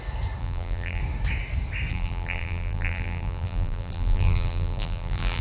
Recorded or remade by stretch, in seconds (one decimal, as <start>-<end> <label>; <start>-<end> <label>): 0.0-0.4 recorded; 0.4-1.0 remade; 1.0-1.9 recorded; 1.9-5.4 remade